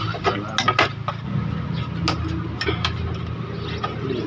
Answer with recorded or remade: recorded